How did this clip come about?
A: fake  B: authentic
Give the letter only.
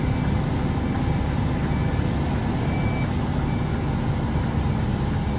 B